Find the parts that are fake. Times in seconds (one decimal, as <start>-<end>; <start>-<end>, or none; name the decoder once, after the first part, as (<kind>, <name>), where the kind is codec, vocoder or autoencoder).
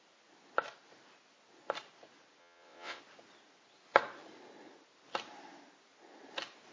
2.4-3.0 (vocoder, WaveNeXt)